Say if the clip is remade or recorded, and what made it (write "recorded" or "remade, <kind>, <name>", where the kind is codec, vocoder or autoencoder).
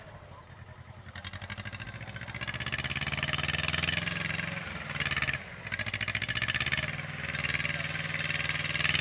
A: recorded